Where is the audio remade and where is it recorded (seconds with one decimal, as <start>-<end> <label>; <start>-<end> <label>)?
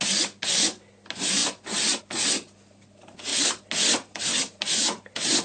0.0-5.4 recorded